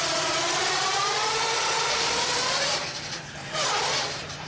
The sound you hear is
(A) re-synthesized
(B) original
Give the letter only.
A